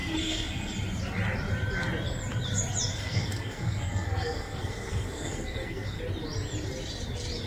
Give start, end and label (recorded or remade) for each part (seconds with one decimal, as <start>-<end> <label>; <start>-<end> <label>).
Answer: 0.0-0.7 remade; 0.7-2.9 recorded; 2.9-6.0 remade; 6.0-7.5 recorded